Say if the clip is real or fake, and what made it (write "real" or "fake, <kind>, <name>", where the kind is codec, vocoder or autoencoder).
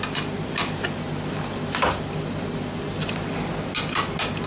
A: real